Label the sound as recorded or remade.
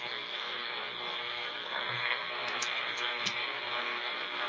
remade